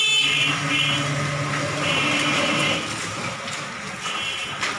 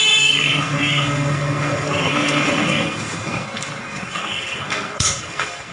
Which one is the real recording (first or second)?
first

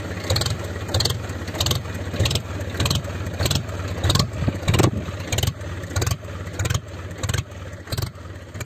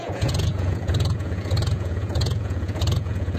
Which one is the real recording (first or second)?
first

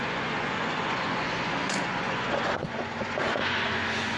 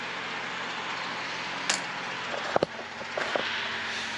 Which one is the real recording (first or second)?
second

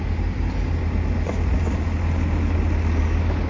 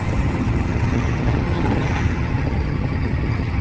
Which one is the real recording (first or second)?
first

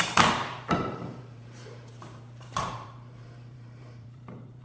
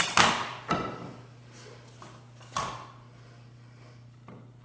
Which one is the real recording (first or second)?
second